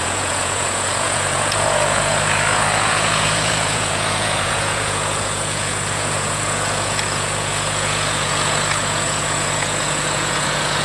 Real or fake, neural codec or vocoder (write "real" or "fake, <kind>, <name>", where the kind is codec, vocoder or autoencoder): fake, vocoder, Vocos